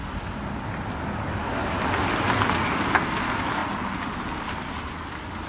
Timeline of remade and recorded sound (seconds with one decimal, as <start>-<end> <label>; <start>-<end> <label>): 0.0-5.5 recorded

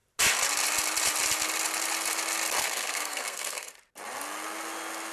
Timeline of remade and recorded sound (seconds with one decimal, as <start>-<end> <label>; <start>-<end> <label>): 0.0-2.6 recorded; 2.6-3.7 remade; 3.7-5.1 recorded

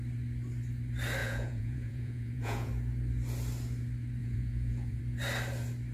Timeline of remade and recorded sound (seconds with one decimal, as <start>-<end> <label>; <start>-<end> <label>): 0.0-1.2 recorded; 1.2-2.7 remade; 2.7-4.2 recorded; 4.2-5.0 remade; 5.0-5.9 recorded

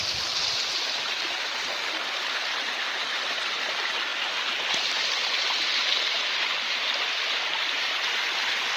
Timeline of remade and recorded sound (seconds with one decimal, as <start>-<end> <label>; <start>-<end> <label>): 0.0-8.8 recorded

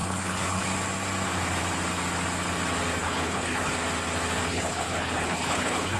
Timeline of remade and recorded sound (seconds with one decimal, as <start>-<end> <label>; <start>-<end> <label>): 0.0-0.6 remade; 0.6-3.0 recorded; 3.0-3.7 remade; 3.7-4.5 recorded; 4.5-6.0 remade